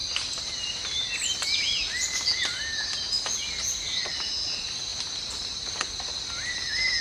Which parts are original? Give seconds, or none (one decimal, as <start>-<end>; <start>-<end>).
0.0-7.0